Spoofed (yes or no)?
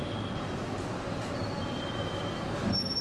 no